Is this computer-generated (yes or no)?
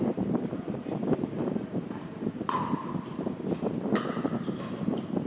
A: yes